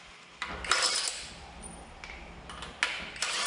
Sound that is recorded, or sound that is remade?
recorded